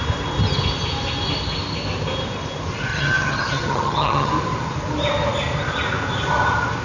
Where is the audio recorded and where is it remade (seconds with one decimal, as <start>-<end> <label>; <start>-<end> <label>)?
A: 0.0-2.9 recorded; 2.9-4.3 remade; 4.3-6.8 recorded